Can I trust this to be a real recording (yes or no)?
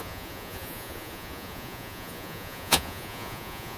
no